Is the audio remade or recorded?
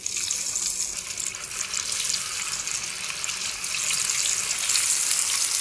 recorded